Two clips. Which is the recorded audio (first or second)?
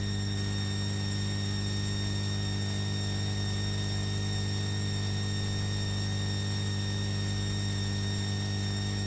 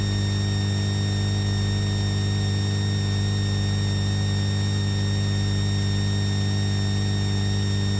second